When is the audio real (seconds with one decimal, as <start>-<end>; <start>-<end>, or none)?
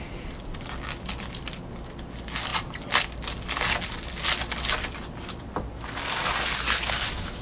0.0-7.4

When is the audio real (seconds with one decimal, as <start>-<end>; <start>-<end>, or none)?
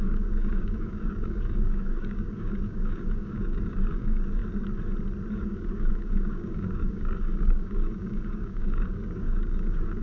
4.4-5.3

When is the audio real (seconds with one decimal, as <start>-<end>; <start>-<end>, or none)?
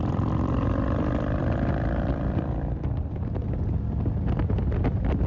0.0-5.3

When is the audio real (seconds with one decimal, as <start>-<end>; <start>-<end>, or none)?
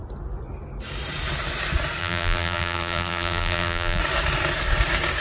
0.0-2.0; 4.0-5.2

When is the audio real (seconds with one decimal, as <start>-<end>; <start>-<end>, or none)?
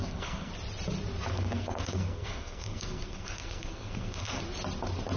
0.5-1.3; 4.4-5.2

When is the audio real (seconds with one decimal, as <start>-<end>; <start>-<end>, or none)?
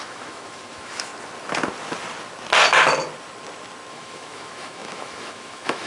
1.1-3.9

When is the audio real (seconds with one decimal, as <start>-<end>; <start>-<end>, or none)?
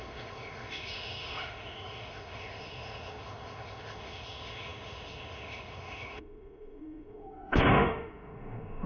none